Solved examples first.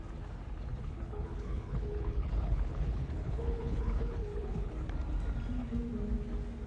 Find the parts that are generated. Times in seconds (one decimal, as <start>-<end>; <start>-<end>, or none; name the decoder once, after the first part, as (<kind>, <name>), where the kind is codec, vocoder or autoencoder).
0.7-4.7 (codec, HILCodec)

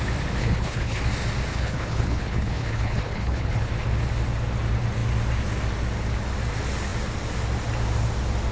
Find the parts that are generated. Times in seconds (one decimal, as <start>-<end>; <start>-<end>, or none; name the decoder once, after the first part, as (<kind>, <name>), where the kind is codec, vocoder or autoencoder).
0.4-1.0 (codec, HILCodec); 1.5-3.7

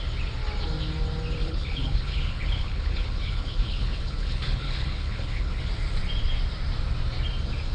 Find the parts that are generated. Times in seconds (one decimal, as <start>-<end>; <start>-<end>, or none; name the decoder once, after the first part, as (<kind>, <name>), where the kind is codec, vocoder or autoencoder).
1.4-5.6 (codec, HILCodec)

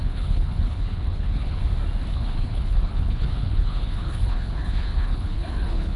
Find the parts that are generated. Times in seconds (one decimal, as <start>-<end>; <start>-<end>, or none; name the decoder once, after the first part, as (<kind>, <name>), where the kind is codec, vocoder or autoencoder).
0.0-1.6 (codec, HILCodec); 2.1-6.0

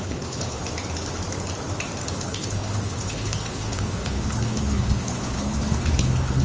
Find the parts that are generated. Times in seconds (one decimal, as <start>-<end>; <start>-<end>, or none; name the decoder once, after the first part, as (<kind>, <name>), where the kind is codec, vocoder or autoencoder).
0.0-0.6 (codec, HILCodec); 2.1-6.4

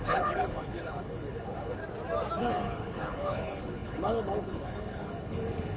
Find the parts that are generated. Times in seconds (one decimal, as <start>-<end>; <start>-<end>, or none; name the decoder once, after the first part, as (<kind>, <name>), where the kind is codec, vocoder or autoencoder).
0.0-1.8 (codec, HILCodec); 2.4-5.8

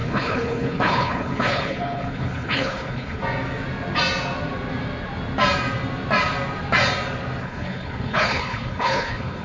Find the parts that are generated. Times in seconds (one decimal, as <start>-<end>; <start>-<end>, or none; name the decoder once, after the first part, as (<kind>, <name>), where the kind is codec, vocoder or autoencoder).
0.0-3.2 (codec, HILCodec); 7.4-9.4

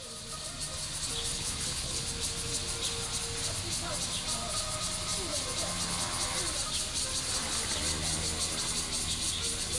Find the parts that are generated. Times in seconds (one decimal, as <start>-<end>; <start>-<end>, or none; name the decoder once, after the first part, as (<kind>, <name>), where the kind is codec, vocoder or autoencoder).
1.3-2.0 (codec, HILCodec)